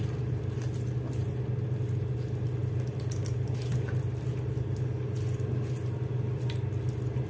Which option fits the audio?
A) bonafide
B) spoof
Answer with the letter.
A